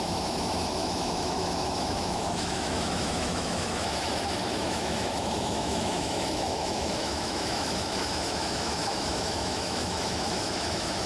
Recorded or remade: remade